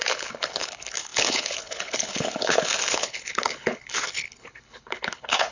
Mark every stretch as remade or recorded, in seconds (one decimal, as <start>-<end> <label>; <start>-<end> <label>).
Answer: 0.0-5.5 remade

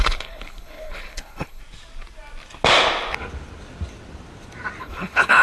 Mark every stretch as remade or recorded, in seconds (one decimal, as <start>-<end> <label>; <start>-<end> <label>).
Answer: 0.0-1.6 remade; 1.6-4.8 recorded; 4.8-5.4 remade